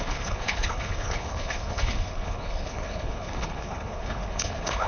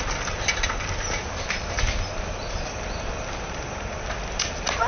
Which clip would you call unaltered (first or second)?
second